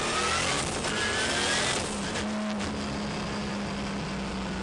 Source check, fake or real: real